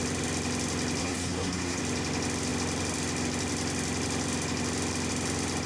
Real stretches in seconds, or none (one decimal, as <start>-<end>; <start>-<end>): 0.0-1.0; 1.8-5.7